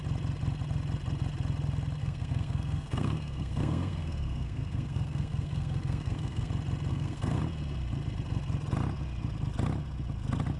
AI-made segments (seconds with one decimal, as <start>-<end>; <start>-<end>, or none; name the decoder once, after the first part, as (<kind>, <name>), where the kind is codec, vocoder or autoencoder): 2.0-6.5 (codec, SNAC); 6.9-7.4